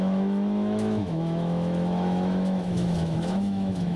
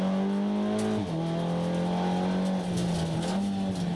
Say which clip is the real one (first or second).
second